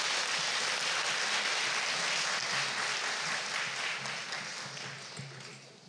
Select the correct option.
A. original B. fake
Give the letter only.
A